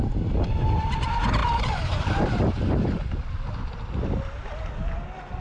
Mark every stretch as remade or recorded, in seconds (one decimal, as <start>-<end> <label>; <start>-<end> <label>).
0.0-5.4 recorded